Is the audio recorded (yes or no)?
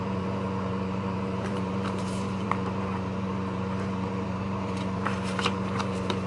no